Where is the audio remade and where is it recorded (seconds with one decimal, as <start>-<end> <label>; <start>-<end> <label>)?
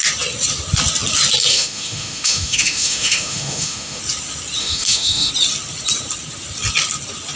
0.0-1.5 recorded; 1.5-4.0 remade; 4.0-4.6 recorded; 4.6-5.3 remade; 5.3-7.4 recorded